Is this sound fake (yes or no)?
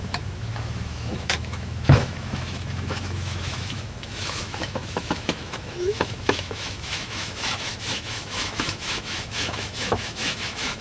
yes